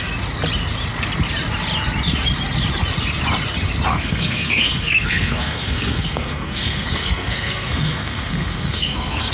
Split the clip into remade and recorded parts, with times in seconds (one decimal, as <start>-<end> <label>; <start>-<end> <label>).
0.0-3.9 recorded; 3.9-9.3 remade

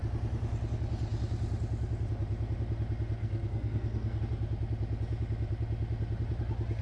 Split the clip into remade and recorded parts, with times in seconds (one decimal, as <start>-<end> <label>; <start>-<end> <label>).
0.0-3.2 recorded; 3.2-4.2 remade; 4.2-6.8 recorded